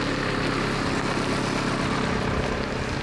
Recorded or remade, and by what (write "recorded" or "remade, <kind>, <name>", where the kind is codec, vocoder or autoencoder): recorded